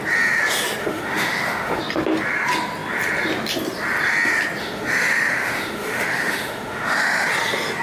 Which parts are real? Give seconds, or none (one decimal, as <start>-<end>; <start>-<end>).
0.0-0.8; 1.8-4.6; 7.3-7.8